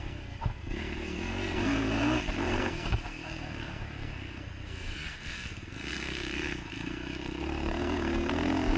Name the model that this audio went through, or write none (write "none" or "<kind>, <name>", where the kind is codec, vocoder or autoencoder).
codec, SNAC